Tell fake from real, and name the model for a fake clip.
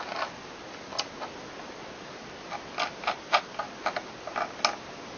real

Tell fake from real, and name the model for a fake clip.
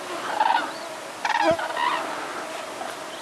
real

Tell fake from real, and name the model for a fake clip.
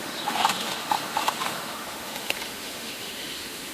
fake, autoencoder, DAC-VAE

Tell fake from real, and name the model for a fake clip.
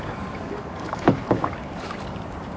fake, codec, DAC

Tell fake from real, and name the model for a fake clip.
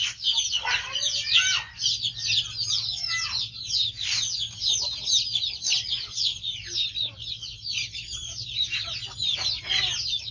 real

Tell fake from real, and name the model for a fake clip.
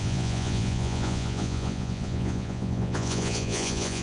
fake, vocoder, Vocos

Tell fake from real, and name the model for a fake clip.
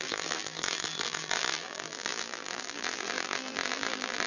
fake, vocoder, BigVGAN v2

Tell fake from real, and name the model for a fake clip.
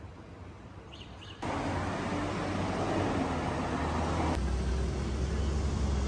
real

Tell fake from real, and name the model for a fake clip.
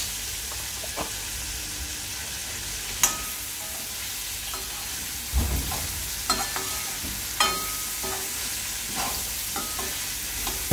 real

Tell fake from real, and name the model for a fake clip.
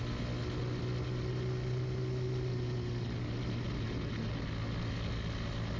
real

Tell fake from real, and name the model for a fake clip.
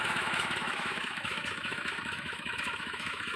fake, autoencoder, DAC-VAE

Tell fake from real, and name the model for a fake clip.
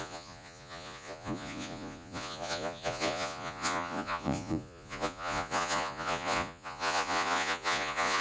fake, vocoder, Vocos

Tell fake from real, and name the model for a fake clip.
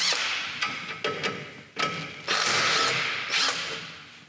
real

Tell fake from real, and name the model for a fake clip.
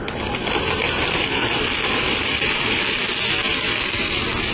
real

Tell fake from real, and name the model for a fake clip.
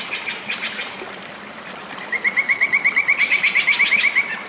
real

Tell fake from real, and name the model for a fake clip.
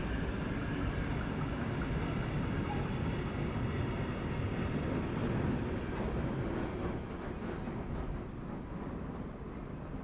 real